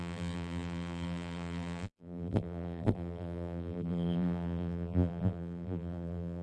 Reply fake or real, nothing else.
fake